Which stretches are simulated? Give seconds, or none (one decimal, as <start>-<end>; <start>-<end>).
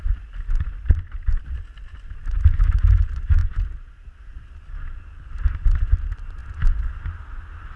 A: none